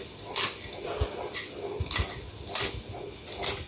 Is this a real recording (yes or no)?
yes